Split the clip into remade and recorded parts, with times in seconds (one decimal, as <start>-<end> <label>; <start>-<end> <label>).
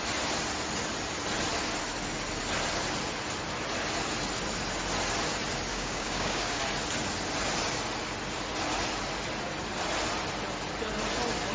0.0-5.7 recorded; 5.7-6.6 remade; 6.6-11.5 recorded